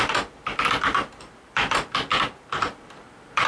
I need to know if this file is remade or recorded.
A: remade